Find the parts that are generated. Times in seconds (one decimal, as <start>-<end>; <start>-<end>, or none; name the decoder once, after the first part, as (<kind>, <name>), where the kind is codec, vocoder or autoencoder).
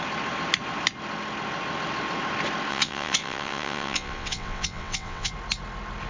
2.7-5.3 (vocoder, WaveNeXt)